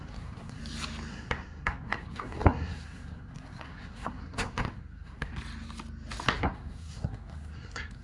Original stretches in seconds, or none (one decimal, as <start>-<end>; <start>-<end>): 0.6-1.1; 5.3-6.4